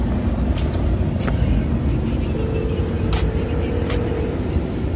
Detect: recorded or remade recorded